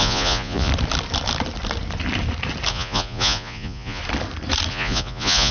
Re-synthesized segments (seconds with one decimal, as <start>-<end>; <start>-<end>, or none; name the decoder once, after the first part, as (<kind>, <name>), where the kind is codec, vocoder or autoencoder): 0.0-0.7 (vocoder, Vocos); 2.7-4.0; 4.7-5.5